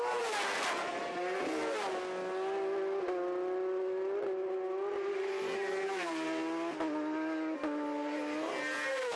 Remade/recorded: recorded